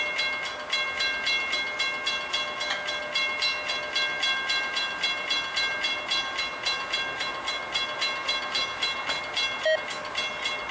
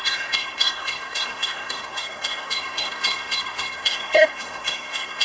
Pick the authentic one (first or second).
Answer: first